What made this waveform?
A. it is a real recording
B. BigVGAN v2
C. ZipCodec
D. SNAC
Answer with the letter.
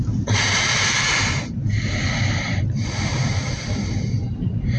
B